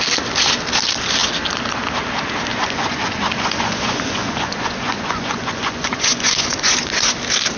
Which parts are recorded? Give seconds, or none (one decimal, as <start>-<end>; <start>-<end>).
0.0-2.5; 7.1-7.6

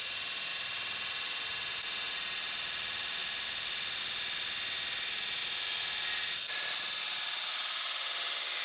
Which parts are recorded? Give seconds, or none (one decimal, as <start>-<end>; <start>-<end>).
0.0-8.6